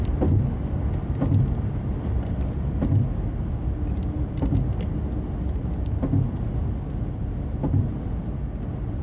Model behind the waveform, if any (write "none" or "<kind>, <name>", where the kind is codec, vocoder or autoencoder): none